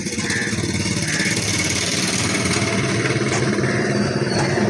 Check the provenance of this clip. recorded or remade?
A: recorded